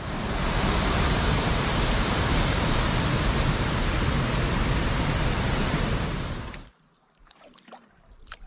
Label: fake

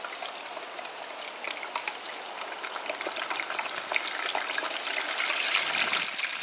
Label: real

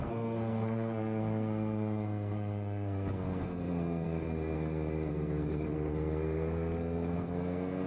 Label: fake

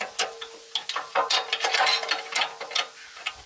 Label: real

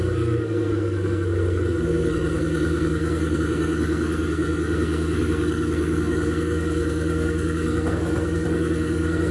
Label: fake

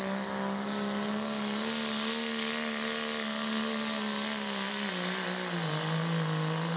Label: real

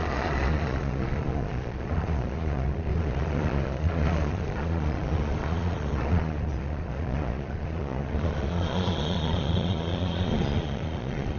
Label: fake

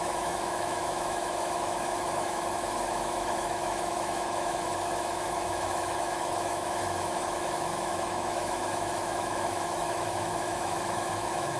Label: fake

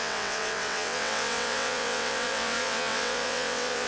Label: fake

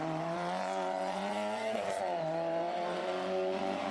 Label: fake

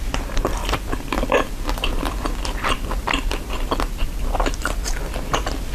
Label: real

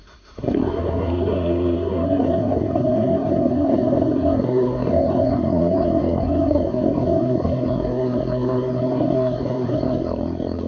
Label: fake